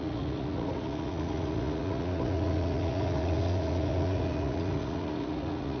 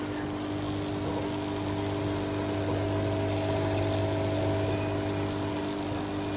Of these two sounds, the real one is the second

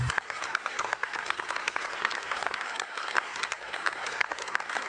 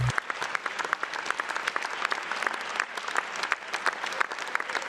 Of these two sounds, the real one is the second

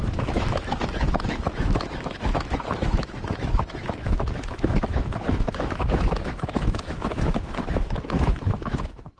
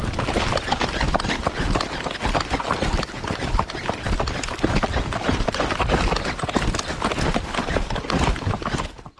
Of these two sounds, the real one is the second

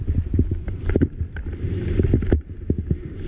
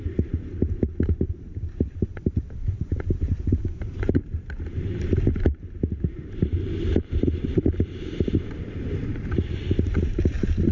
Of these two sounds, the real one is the first